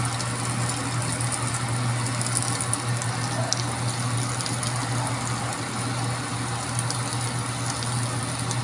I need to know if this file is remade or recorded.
recorded